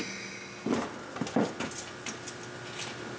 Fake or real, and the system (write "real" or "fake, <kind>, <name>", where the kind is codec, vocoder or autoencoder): real